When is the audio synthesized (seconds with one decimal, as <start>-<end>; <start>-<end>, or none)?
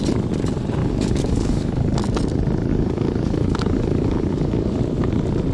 0.8-2.0; 2.7-4.8